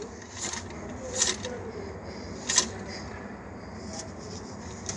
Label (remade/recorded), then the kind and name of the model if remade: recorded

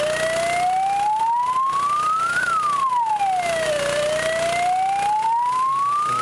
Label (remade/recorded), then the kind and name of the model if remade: recorded